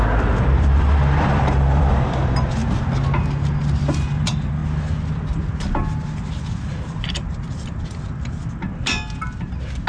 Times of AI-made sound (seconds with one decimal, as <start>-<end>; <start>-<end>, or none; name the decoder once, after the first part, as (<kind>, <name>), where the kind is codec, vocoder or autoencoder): 0.0-2.6 (vocoder, BigVGAN v2); 3.9-4.6

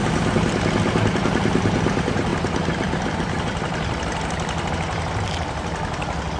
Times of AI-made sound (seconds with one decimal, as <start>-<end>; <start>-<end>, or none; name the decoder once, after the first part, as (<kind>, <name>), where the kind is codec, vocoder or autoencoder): none

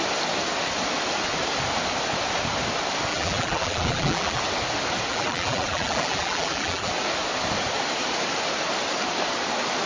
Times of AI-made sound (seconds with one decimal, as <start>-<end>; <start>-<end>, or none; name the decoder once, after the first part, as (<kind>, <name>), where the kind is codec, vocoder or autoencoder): 3.1-4.4 (vocoder, BigVGAN v2); 5.1-6.9

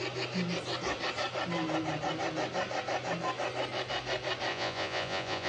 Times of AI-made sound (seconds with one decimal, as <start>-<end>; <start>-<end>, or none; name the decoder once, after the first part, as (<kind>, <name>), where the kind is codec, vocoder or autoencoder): 4.5-5.5 (vocoder, Vocos)

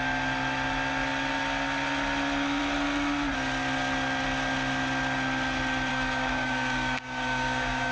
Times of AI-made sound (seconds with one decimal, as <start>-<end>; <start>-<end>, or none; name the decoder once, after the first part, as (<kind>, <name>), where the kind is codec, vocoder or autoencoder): 5.9-7.9 (codec, DAC)